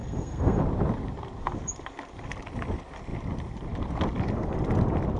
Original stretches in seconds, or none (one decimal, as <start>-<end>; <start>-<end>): 0.6-5.2